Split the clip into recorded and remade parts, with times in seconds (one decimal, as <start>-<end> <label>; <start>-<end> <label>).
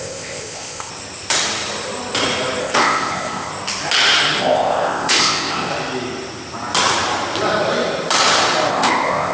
0.0-0.9 remade; 0.9-2.6 recorded; 2.6-3.5 remade; 3.5-4.4 recorded; 4.4-5.7 remade; 5.7-8.7 recorded; 8.7-9.3 remade